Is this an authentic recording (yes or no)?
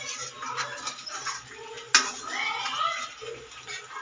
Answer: yes